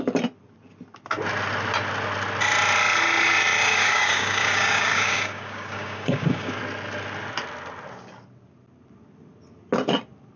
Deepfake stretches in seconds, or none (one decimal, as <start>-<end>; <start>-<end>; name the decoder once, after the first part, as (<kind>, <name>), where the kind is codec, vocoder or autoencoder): 3.7-6.6 (codec, DAC)